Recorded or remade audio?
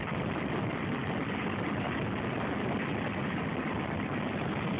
remade